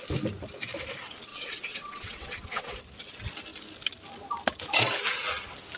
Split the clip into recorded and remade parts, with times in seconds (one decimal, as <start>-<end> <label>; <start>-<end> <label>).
0.0-1.3 recorded; 1.3-2.8 remade; 2.8-5.8 recorded